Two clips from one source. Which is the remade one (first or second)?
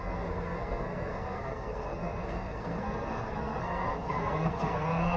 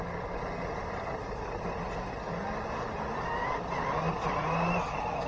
first